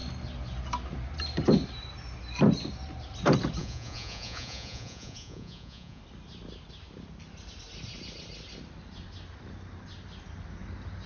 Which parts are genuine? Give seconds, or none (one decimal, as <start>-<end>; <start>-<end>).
0.0-3.6; 6.0-11.1